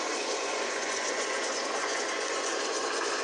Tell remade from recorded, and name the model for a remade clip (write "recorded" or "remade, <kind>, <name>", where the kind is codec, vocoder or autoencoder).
remade, vocoder, Vocos